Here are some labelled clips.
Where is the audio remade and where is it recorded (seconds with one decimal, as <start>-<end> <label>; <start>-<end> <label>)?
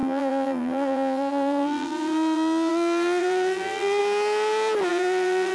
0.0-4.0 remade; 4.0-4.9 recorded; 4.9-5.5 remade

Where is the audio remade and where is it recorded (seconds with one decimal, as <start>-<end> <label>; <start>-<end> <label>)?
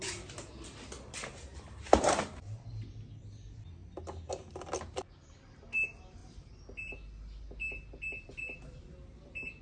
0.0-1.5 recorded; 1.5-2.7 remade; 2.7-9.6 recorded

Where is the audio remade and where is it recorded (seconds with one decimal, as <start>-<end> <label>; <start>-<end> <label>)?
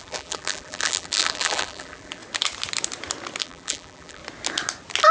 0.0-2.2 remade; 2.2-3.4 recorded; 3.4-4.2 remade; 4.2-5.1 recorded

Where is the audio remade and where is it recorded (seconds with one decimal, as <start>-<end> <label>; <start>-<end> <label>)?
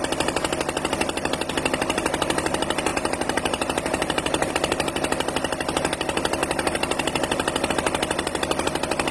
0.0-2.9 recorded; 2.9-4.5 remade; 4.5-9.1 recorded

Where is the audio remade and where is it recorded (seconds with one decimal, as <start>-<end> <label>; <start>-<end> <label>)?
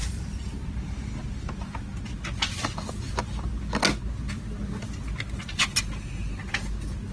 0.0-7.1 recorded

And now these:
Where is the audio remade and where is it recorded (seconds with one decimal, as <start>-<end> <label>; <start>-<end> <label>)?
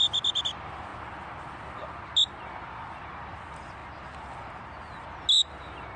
0.0-6.0 recorded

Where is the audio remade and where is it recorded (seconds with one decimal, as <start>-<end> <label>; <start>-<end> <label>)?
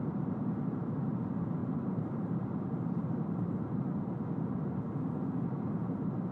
0.0-1.6 recorded; 1.6-4.2 remade; 4.2-6.3 recorded